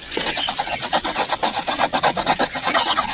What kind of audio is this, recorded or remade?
remade